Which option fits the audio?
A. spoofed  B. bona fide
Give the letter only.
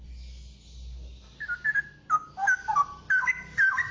B